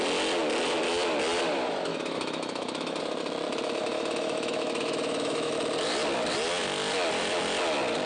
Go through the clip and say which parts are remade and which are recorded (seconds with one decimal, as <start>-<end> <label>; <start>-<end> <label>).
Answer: 0.0-1.9 recorded; 1.9-3.0 remade; 3.0-3.8 recorded; 3.8-5.5 remade; 5.5-8.1 recorded